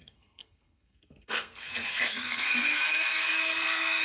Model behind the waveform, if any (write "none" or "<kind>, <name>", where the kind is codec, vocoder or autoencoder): codec, SNAC